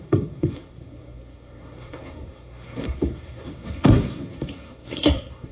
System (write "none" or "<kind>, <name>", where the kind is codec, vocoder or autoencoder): codec, SNAC